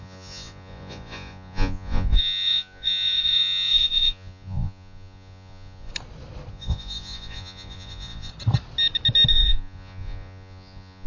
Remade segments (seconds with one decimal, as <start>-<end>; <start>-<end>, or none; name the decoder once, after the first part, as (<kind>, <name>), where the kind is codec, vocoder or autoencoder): 0.0-5.9 (vocoder, Vocos); 6.5-8.3; 9.3-11.1